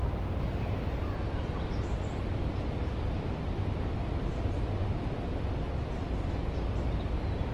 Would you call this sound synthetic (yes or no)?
no